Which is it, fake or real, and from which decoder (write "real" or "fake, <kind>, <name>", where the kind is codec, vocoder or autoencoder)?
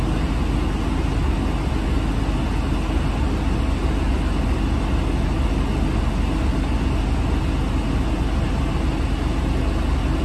real